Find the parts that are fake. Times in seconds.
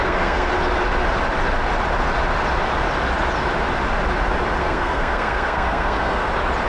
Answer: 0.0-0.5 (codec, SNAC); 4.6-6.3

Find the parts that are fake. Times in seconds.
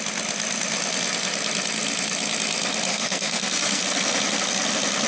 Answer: 2.9-3.8 (codec, SNAC)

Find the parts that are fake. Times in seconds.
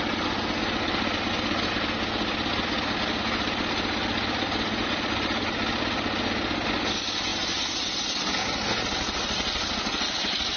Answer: none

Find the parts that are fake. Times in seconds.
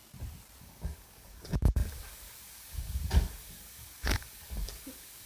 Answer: 0.6-5.3 (codec, DAC)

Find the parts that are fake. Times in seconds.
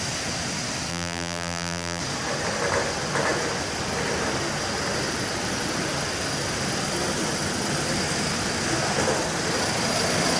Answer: 0.9-2.0 (vocoder, BigVGAN v2)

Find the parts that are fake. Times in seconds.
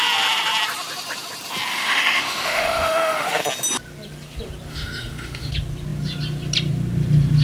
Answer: 1.7-3.4 (autoencoder, DAC-VAE); 4.7-5.5